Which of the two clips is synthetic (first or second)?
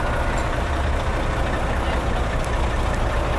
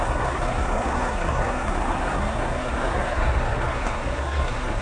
second